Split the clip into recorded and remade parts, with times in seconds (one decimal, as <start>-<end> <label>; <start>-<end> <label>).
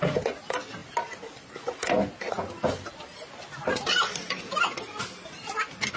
0.0-6.0 recorded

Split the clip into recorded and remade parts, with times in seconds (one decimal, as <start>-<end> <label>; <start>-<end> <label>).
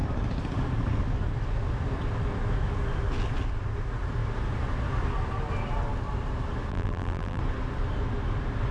0.0-6.7 recorded; 6.7-7.4 remade; 7.4-8.7 recorded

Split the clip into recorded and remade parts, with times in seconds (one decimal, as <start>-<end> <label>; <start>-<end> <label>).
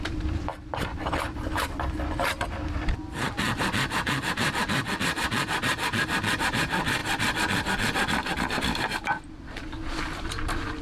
0.0-7.0 remade; 7.0-8.4 recorded; 8.4-10.8 remade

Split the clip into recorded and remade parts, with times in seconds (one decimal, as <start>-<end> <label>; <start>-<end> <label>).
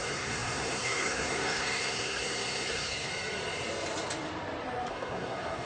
0.0-3.1 remade; 3.1-4.9 recorded; 4.9-5.7 remade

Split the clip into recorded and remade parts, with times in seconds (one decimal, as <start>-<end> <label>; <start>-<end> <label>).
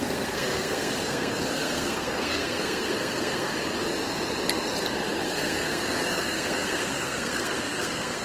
0.0-3.5 remade; 3.5-5.2 recorded; 5.2-8.2 remade